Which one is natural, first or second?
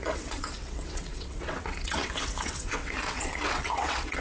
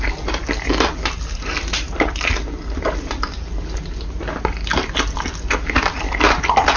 second